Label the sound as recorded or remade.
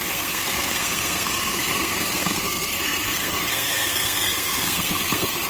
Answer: remade